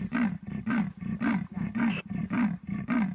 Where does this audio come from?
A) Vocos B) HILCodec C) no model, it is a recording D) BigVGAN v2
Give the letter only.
D